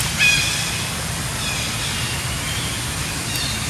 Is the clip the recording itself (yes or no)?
yes